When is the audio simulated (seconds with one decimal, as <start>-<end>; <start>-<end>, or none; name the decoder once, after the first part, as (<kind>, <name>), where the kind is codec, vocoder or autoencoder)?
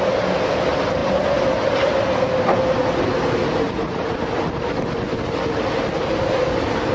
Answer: none